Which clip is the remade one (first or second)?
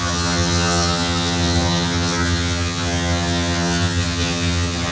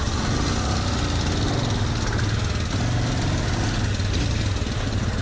first